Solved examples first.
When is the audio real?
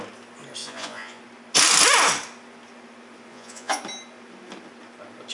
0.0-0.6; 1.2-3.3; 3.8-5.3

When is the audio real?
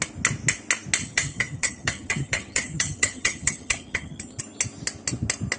0.0-1.0; 4.4-5.6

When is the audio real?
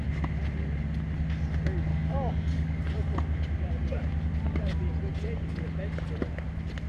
0.0-1.9; 2.8-6.9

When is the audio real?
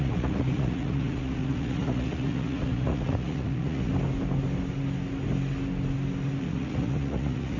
3.9-6.4